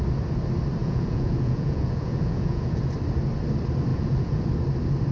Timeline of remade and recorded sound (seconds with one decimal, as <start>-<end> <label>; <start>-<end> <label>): 0.0-0.8 recorded; 0.8-2.8 remade; 2.8-3.9 recorded; 3.9-4.5 remade; 4.5-5.1 recorded